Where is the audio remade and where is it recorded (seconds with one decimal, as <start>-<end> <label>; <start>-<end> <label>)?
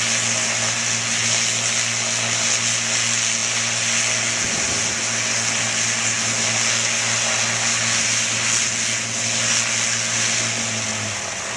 0.0-11.6 recorded